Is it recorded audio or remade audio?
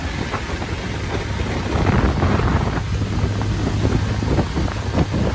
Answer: recorded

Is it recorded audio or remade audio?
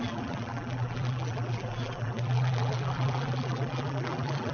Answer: remade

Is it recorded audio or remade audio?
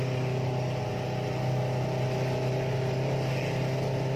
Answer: recorded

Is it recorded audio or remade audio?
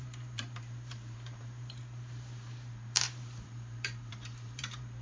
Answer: remade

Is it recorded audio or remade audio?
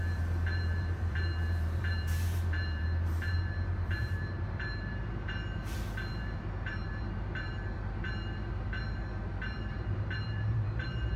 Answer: remade